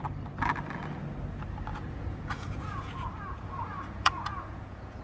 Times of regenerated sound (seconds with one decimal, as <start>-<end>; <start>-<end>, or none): 1.7-5.0